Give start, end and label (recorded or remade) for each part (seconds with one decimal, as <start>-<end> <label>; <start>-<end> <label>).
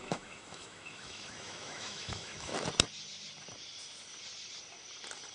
0.0-2.5 remade; 2.5-5.3 recorded